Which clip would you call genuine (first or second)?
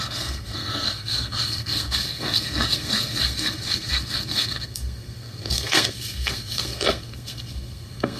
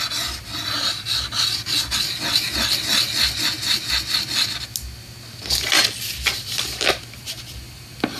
second